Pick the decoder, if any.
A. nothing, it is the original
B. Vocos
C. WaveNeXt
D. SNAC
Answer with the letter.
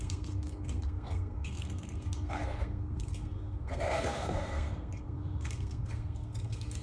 D